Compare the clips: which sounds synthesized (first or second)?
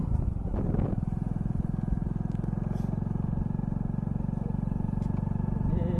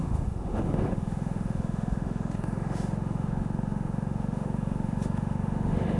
second